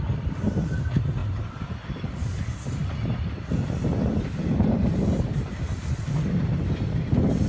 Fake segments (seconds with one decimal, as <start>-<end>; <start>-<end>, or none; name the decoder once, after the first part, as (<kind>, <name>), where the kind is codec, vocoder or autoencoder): none